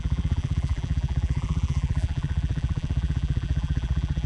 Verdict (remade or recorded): remade